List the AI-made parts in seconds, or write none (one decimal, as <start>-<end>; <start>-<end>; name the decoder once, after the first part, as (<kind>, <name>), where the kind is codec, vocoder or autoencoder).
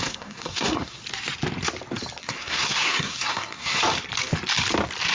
0.0-1.0 (codec, SNAC); 2.2-3.8